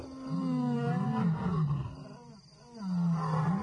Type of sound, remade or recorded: recorded